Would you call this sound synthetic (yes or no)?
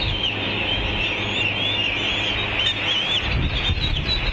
no